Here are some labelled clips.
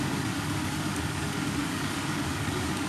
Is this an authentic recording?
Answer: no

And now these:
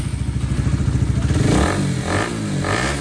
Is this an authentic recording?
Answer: yes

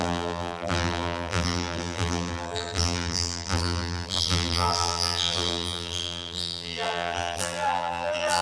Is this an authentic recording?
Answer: no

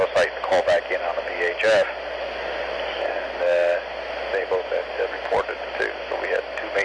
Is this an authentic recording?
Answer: yes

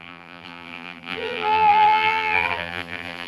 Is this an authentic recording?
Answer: no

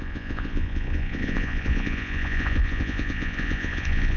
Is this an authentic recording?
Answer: no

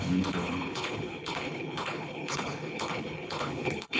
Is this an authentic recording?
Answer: no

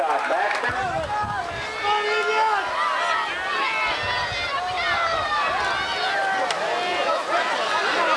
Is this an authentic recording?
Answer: yes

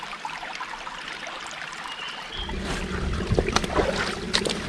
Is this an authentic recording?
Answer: yes